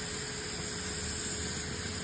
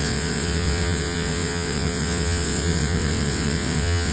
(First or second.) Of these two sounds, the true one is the first